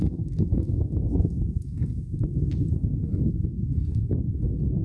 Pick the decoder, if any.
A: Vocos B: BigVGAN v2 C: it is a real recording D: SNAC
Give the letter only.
D